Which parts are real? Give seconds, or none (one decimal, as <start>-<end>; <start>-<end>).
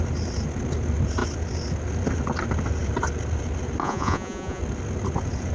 0.0-3.8; 4.6-5.5